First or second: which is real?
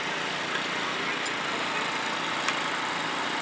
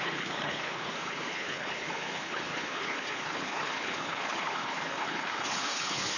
first